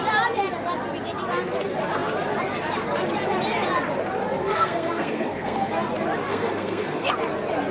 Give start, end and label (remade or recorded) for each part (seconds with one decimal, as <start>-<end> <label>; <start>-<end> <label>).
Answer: 0.0-4.4 recorded; 4.4-5.7 remade; 5.7-6.3 recorded; 6.3-7.1 remade; 7.1-7.7 recorded